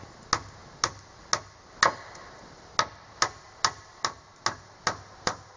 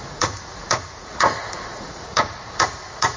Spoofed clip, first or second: second